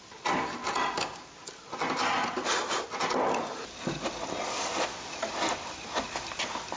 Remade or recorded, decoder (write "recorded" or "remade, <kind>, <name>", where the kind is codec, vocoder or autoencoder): recorded